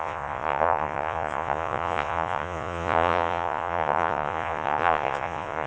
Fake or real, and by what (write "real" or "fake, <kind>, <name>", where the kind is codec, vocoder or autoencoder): fake, vocoder, Vocos